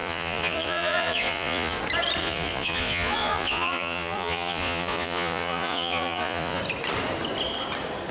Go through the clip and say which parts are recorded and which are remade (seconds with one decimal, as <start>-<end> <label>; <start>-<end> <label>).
0.0-1.8 remade; 1.8-2.2 recorded; 2.2-6.6 remade; 6.6-8.1 recorded